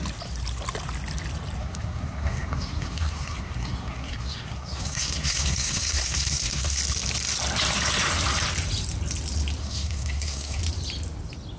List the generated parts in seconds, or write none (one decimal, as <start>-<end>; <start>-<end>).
1.6-6.8; 9.6-10.6